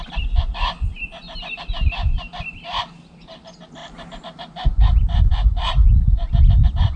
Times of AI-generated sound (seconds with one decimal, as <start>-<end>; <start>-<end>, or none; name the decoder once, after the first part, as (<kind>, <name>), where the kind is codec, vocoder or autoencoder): none